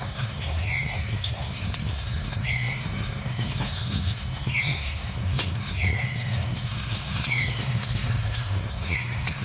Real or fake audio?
fake